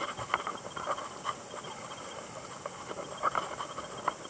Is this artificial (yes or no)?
no